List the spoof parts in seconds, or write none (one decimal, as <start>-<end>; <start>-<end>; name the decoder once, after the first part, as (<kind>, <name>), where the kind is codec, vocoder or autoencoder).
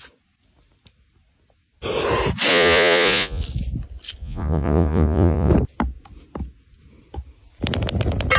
2.5-3.4 (vocoder, Vocos); 4.2-5.5